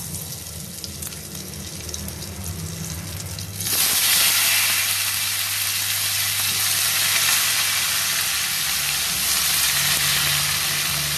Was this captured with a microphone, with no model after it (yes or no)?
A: yes